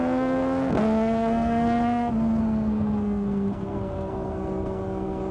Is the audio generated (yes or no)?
yes